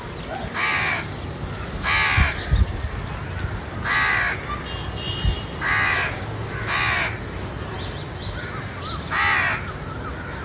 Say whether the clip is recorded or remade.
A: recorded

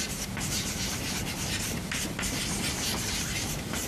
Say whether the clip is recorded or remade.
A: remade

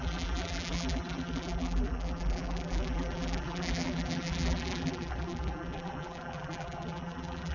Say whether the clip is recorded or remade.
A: remade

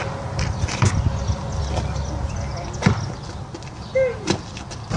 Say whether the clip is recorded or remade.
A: recorded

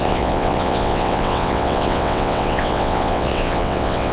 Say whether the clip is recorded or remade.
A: remade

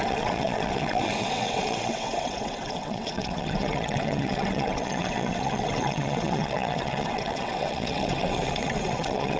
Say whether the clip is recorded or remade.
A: remade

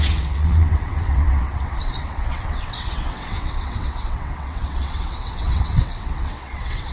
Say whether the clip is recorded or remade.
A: remade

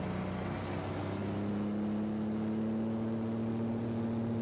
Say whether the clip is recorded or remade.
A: recorded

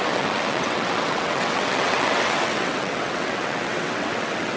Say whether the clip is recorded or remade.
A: remade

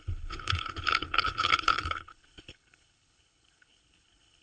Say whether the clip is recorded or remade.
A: remade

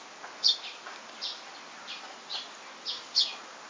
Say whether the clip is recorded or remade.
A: recorded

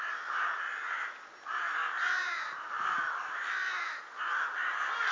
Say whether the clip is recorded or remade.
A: recorded